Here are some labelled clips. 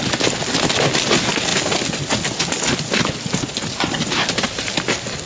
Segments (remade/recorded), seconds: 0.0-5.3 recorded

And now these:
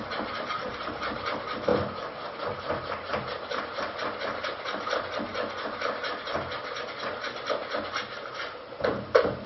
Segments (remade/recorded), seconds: 0.0-1.7 remade; 1.7-2.4 recorded; 2.4-5.3 remade; 5.3-8.3 recorded; 8.3-9.5 remade

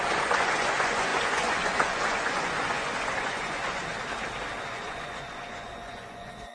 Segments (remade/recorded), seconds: 0.0-3.8 remade; 3.8-4.7 recorded; 4.7-6.5 remade

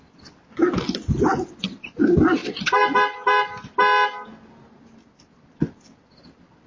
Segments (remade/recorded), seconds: 0.0-6.7 recorded